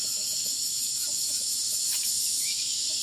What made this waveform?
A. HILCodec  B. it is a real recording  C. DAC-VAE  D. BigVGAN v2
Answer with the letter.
C